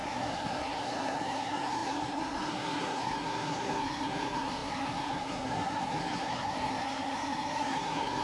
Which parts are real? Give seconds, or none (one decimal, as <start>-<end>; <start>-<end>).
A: none